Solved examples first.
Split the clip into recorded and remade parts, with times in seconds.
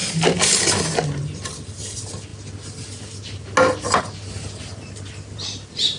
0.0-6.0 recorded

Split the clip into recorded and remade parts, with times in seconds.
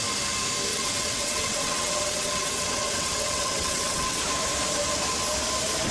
0.0-0.7 recorded; 0.7-4.2 remade; 4.2-5.9 recorded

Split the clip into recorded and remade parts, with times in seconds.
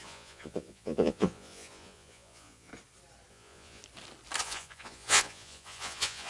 0.0-2.7 remade; 2.7-3.3 recorded; 3.3-3.8 remade; 3.8-4.4 recorded; 4.4-6.3 remade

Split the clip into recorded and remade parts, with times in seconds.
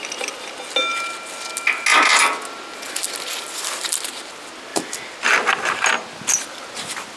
0.0-7.2 recorded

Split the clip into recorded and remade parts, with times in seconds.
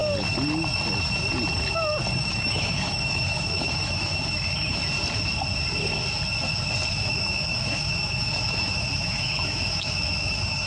0.0-2.2 recorded; 2.2-4.8 remade; 4.8-6.9 recorded; 6.9-10.7 remade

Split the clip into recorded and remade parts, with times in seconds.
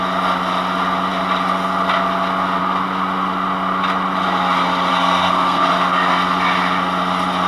0.0-4.9 recorded; 4.9-5.7 remade; 5.7-7.5 recorded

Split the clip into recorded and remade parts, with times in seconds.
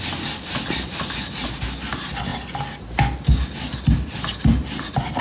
0.0-5.2 recorded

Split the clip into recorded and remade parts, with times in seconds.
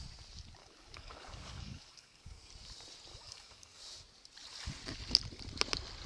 0.0-0.6 recorded; 0.6-2.5 remade; 2.5-3.1 recorded; 3.1-3.8 remade; 3.8-6.1 recorded